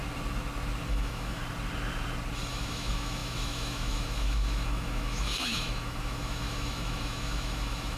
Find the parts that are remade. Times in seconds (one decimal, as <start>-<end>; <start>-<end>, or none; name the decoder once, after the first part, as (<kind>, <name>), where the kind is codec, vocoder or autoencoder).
0.9-1.4 (autoencoder, DAC-VAE); 2.5-8.0